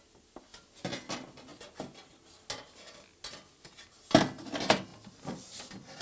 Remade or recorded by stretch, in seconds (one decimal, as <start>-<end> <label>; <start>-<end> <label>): 0.0-6.0 recorded